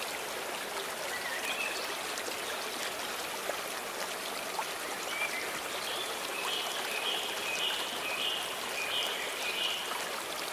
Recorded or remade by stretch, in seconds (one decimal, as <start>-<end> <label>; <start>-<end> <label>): 0.0-10.5 recorded